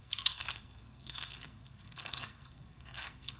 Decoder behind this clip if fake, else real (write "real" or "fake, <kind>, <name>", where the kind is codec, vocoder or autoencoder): fake, codec, SNAC